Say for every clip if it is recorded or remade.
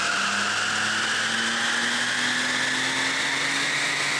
recorded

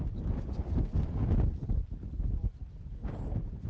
recorded